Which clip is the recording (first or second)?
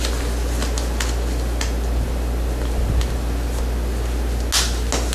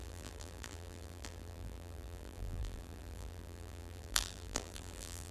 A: first